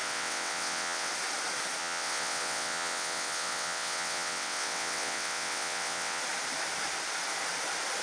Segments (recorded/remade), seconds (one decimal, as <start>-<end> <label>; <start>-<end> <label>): 0.0-1.1 remade; 1.1-1.8 recorded; 1.8-6.2 remade; 6.2-8.0 recorded